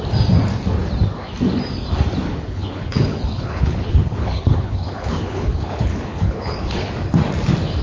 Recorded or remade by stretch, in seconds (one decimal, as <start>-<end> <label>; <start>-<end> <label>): 0.0-2.3 recorded; 2.3-6.9 remade; 6.9-7.8 recorded

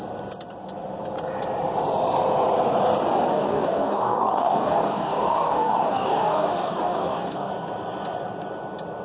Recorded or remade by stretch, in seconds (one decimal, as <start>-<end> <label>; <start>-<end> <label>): 0.0-3.3 recorded; 3.3-7.5 remade; 7.5-9.0 recorded

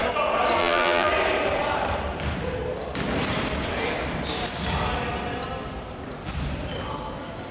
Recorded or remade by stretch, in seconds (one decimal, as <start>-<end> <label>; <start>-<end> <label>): 0.0-0.6 recorded; 0.6-1.1 remade; 1.1-7.5 recorded

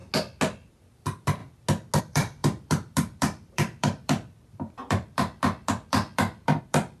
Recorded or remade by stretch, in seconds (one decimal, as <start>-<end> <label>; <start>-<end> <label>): 0.0-0.7 recorded; 0.7-1.4 remade; 1.4-2.0 recorded; 2.0-7.0 remade

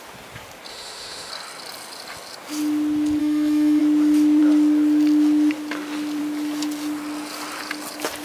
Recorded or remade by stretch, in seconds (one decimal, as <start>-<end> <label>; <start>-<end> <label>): 0.0-0.7 recorded; 0.7-1.3 remade; 1.3-3.2 recorded; 3.2-3.8 remade; 3.8-8.2 recorded

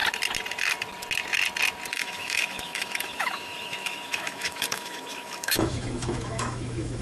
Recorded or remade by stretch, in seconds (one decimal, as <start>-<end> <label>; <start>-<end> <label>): 0.0-1.9 recorded; 1.9-7.0 remade